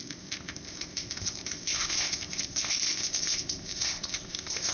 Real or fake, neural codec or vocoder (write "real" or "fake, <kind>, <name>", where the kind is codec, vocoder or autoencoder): fake, codec, ZipCodec